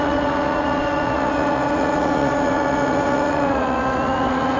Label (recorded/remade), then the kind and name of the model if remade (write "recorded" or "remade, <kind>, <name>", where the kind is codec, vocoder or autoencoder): remade, vocoder, Vocos